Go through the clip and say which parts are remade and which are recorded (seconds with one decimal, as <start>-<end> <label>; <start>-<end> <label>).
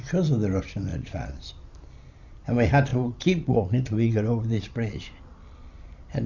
0.0-0.9 recorded; 0.9-1.5 remade; 1.5-2.9 recorded; 2.9-5.0 remade; 5.0-6.3 recorded